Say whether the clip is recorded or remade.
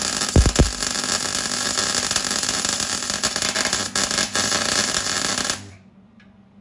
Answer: recorded